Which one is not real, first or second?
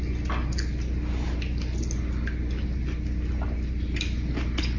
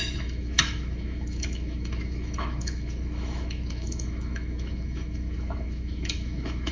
second